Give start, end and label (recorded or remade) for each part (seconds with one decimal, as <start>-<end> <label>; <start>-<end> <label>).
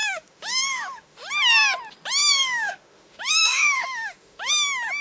0.0-1.3 remade; 1.3-2.2 recorded; 2.2-4.5 remade; 4.5-5.0 recorded